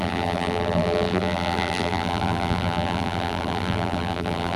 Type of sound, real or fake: fake